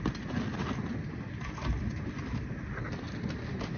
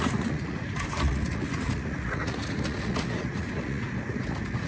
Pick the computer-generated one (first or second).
second